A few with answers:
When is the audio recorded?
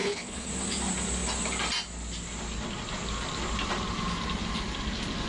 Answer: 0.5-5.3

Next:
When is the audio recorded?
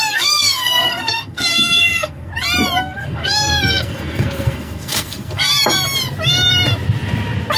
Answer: 2.3-2.8; 5.5-7.6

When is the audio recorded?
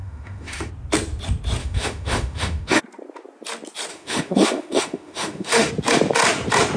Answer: 0.7-1.6; 2.8-3.9; 5.7-6.8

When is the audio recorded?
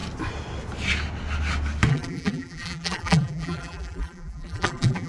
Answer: 0.0-1.9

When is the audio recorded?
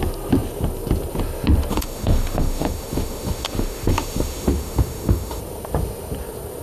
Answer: 0.0-1.7; 5.4-6.6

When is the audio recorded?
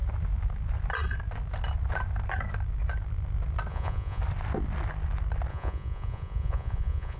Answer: 0.0-3.7; 4.2-5.5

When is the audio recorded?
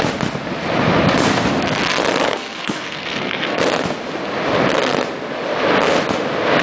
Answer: 0.0-2.2; 3.6-6.6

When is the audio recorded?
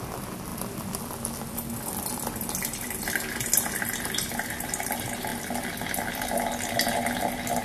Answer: 0.0-7.6